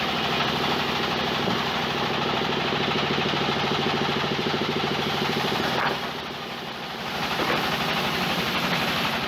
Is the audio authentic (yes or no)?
no